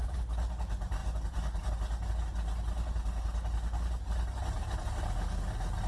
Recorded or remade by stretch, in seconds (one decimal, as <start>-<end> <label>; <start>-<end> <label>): 0.0-5.9 recorded

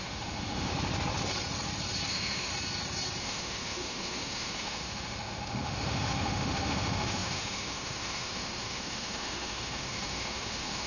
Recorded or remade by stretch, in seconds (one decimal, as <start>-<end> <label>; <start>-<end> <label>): 0.0-0.7 remade; 0.7-2.1 recorded; 2.1-2.5 remade; 2.5-3.2 recorded; 3.2-10.9 remade

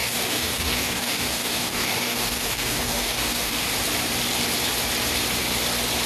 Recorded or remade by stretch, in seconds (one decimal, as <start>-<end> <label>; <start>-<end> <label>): 0.0-3.7 remade; 3.7-6.1 recorded

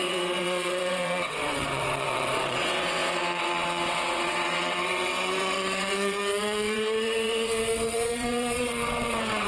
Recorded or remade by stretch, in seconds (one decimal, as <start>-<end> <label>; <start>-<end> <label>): 0.0-9.5 remade

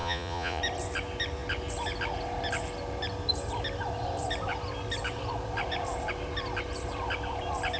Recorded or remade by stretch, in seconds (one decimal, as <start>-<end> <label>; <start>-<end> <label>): 0.0-0.6 remade; 0.6-7.8 recorded

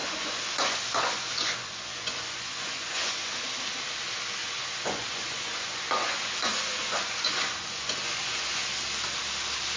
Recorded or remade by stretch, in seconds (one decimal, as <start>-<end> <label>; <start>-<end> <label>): 0.0-3.4 remade; 3.4-4.4 recorded; 4.4-8.6 remade; 8.6-9.8 recorded

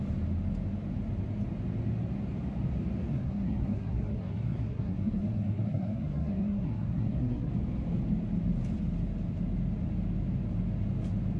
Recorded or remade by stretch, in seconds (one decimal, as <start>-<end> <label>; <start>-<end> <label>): 0.0-3.1 recorded; 3.1-7.5 remade; 7.5-11.4 recorded

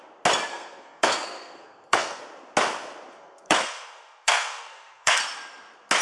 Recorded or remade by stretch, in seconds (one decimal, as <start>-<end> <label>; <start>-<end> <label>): 0.0-0.5 recorded; 0.5-2.2 remade; 2.2-3.1 recorded; 3.1-5.2 remade; 5.2-6.0 recorded